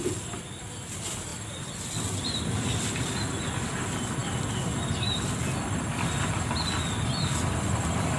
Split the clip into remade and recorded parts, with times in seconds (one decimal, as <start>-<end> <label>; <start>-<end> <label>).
0.0-8.2 recorded